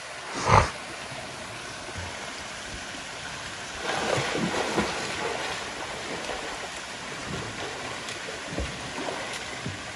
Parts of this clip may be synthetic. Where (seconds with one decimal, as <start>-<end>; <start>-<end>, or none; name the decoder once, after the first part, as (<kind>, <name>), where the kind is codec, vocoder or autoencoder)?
none